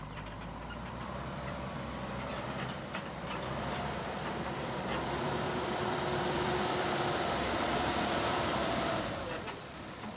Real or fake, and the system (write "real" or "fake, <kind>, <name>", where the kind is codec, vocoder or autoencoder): fake, vocoder, BigVGAN v2